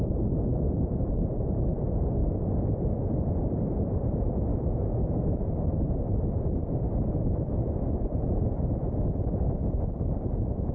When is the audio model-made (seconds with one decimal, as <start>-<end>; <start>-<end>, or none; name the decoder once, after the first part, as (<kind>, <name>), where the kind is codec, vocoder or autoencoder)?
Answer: 4.5-5.4 (autoencoder, DAC-VAE); 6.6-9.8